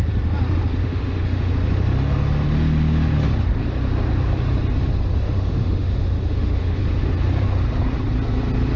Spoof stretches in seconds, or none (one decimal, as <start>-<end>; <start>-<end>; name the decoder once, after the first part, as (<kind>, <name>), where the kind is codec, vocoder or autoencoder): 0.8-1.5 (autoencoder, DAC-VAE); 5.2-6.8